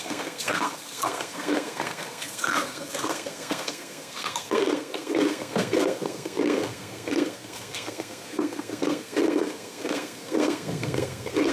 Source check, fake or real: fake